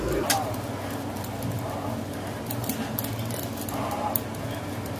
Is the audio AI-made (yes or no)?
no